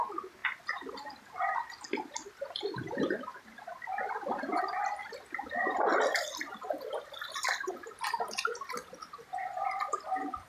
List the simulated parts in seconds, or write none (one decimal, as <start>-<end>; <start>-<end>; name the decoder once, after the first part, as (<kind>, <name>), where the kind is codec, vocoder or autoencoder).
5.0-7.7 (vocoder, BigVGAN v2)